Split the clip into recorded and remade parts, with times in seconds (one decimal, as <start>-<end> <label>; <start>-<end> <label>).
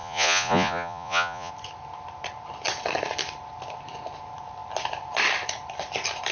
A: 0.0-1.5 remade; 1.5-6.3 recorded